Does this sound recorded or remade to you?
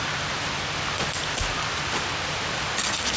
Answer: recorded